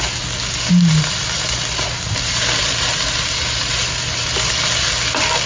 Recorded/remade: recorded